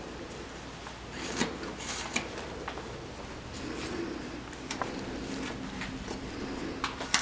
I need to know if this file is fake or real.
real